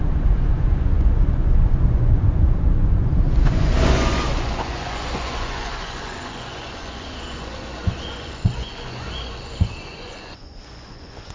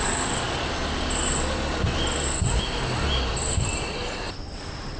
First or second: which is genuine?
second